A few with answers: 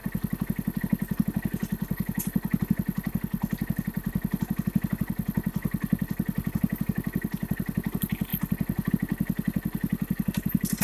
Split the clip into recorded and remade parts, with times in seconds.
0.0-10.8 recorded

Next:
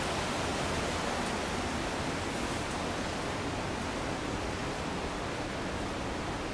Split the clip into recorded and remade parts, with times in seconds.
0.0-4.6 recorded; 4.6-5.5 remade; 5.5-6.5 recorded

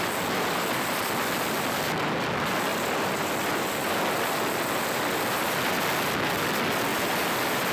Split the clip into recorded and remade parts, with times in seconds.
0.0-2.7 recorded; 2.7-3.2 remade; 3.2-6.9 recorded; 6.9-7.7 remade

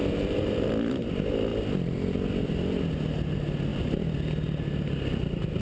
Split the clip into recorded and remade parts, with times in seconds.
0.0-0.7 remade; 0.7-5.6 recorded